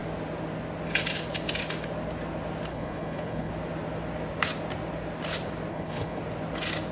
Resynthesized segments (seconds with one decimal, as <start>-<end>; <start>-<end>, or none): 2.7-3.5; 5.7-6.2